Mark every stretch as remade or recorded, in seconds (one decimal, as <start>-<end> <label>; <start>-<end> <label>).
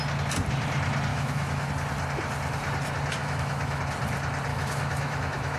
0.0-1.1 recorded; 1.1-1.7 remade; 1.7-3.2 recorded; 3.2-3.8 remade; 3.8-4.5 recorded; 4.5-5.6 remade